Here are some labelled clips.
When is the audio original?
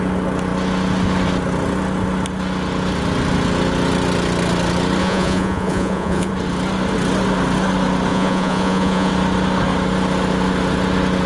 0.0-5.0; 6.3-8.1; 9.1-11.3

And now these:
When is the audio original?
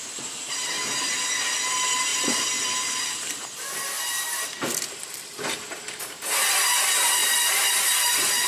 0.0-8.5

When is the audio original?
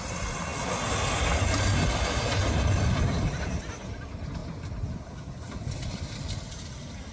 0.0-7.1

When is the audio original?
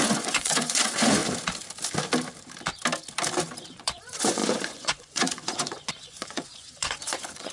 1.2-3.7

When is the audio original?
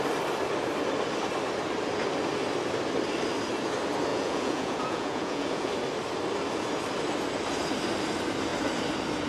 0.0-4.1; 5.7-9.3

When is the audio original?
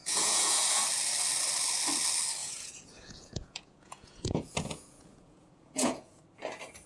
0.8-2.4; 6.2-6.9